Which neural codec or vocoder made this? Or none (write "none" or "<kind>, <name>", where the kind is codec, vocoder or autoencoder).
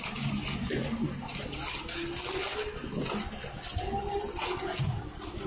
none